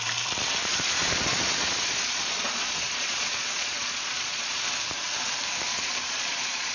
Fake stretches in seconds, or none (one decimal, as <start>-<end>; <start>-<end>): 0.6-4.6; 5.7-6.7